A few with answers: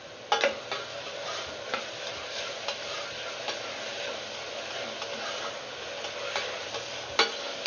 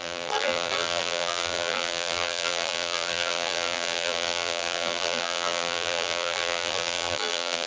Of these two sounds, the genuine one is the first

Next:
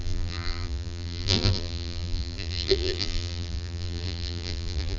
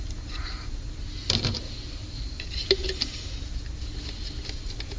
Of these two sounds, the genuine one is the second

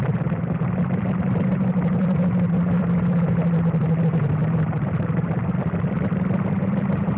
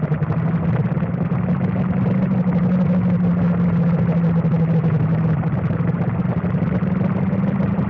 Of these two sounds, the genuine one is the second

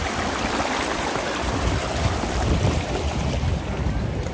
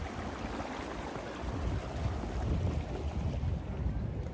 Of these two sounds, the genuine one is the second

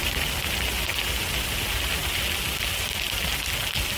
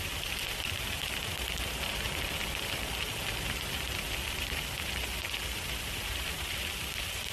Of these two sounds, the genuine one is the first